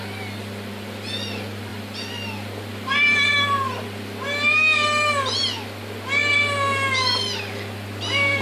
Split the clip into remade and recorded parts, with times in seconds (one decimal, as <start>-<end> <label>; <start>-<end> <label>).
0.0-8.4 recorded